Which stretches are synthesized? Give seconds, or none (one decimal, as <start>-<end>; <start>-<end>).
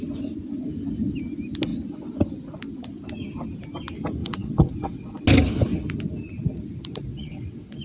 4.2-5.2; 7.1-7.8